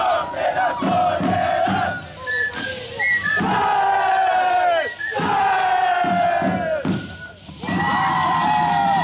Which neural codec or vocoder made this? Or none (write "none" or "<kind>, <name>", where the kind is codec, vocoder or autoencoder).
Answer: none